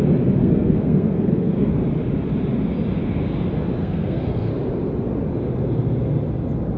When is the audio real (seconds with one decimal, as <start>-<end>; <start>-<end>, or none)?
0.0-0.4; 1.7-3.8; 4.5-6.8